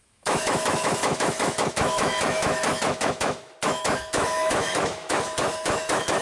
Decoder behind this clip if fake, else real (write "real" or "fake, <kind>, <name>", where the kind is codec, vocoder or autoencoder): fake, autoencoder, DAC-VAE